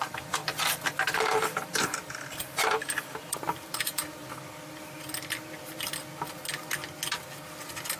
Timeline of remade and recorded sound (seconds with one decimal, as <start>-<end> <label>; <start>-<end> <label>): 0.0-4.2 remade; 4.2-7.6 recorded; 7.6-8.0 remade